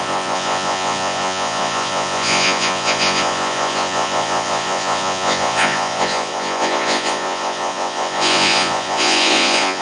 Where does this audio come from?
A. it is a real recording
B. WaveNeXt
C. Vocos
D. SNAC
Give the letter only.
C